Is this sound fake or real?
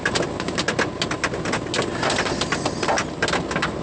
real